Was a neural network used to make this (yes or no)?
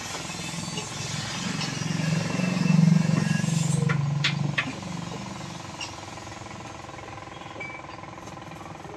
no